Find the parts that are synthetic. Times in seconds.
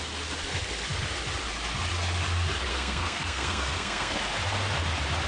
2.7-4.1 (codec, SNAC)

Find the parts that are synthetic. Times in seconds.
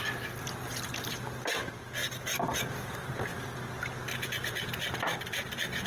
0.0-2.0 (vocoder, BigVGAN v2); 2.7-3.3; 4.2-5.9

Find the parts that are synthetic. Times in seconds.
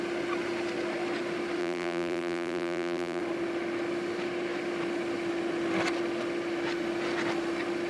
1.6-3.2 (vocoder, BigVGAN v2)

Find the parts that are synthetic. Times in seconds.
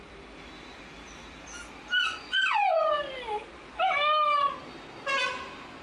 2.1-2.9 (vocoder, Vocos)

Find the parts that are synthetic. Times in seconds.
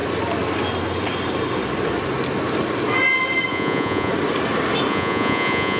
3.5-4.1 (vocoder, Vocos); 4.9-5.8